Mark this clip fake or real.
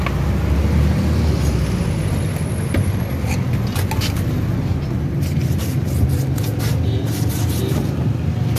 real